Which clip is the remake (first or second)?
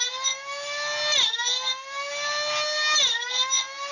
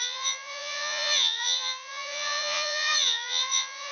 second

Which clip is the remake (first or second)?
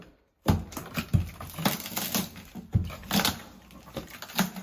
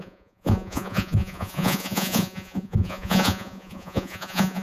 second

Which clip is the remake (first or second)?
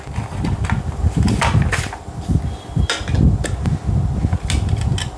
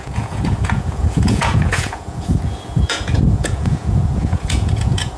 second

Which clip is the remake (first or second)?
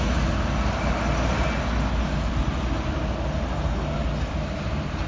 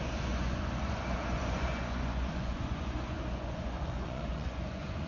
second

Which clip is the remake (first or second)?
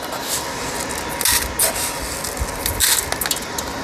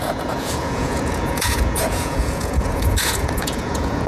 second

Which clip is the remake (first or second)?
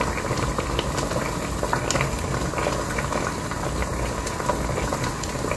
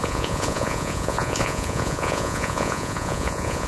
second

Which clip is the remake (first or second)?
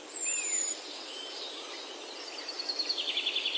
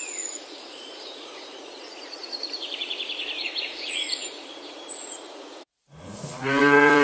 second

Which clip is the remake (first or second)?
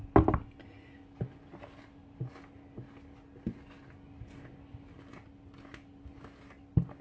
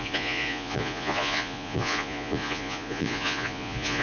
second